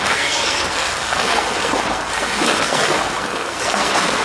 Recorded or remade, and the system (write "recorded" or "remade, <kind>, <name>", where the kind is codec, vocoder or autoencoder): remade, codec, SNAC